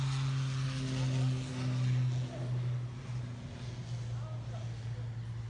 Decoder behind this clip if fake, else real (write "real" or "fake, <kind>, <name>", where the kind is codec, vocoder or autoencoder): real